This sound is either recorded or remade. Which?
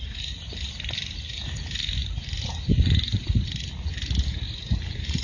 recorded